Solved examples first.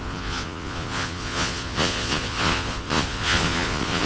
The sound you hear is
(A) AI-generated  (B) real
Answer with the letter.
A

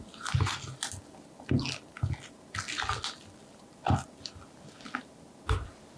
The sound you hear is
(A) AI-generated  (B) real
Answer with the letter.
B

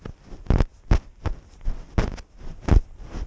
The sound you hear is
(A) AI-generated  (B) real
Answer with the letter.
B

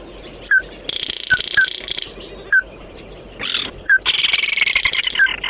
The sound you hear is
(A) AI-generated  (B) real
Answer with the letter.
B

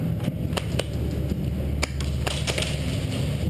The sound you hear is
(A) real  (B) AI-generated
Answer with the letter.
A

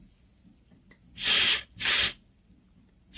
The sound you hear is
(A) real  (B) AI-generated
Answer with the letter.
A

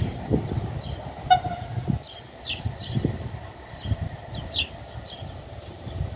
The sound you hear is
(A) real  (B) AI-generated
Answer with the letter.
A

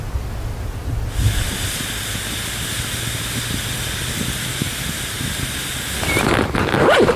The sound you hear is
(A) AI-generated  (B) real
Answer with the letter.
B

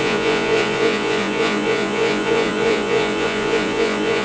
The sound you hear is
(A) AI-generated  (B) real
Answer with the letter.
A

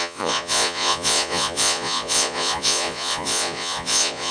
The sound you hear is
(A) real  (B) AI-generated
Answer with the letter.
B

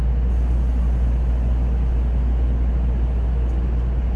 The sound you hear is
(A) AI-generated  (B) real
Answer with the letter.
B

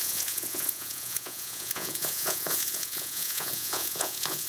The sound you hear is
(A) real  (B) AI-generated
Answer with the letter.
B